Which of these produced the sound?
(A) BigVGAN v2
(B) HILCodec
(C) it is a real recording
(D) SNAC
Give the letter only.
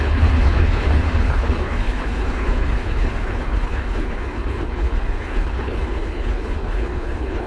B